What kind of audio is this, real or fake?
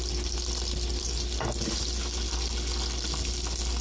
real